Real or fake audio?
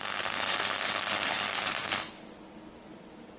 real